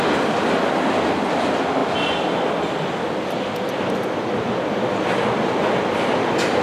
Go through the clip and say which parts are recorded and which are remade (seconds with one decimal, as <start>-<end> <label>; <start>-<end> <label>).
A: 0.0-6.6 recorded